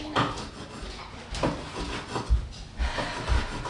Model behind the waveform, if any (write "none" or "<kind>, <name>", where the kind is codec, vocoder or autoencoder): none